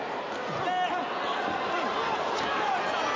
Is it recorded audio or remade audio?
recorded